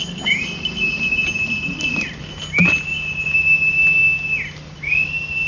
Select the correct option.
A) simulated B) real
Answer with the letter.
B